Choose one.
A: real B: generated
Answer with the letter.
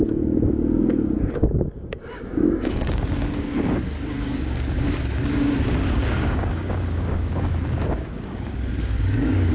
B